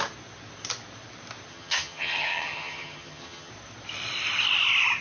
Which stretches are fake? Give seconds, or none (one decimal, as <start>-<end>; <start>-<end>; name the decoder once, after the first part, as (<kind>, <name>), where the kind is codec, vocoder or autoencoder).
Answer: 1.5-3.5 (vocoder, HiFi-GAN)